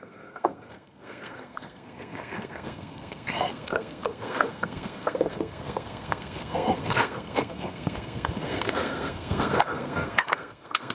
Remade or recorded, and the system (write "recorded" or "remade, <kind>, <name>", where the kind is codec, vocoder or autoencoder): remade, codec, SNAC